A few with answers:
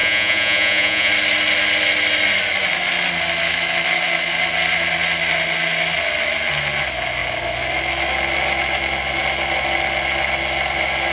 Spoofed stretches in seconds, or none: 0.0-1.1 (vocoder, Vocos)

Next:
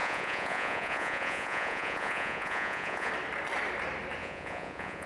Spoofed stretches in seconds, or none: 0.0-3.1 (vocoder, Vocos); 4.2-5.1

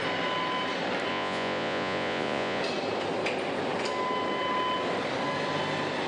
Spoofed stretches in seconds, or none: 1.1-2.6 (vocoder, Vocos)

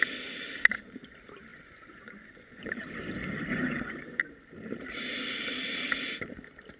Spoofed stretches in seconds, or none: 1.5-2.7 (vocoder, Vocos); 3.5-4.2

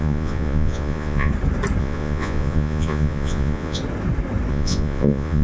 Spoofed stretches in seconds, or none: 0.0-1.3 (vocoder, Vocos); 1.8-3.8; 4.5-5.4